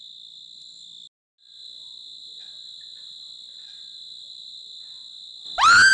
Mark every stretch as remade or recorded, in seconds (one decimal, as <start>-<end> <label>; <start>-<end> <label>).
0.0-5.9 recorded